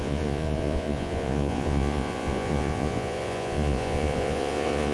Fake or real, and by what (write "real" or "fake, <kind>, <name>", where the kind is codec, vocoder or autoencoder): fake, vocoder, Vocos